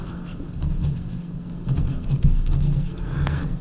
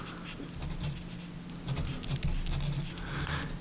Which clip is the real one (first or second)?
second